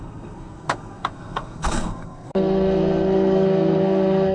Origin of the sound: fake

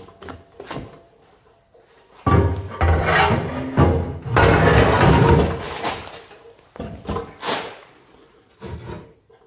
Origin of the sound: real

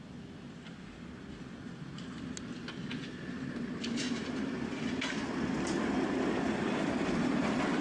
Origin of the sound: real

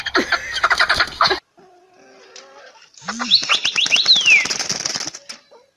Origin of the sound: real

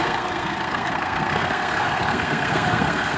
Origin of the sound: fake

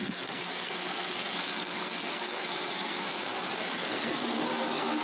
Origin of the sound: fake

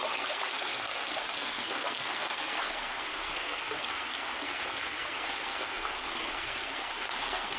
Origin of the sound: fake